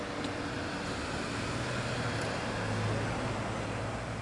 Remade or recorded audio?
recorded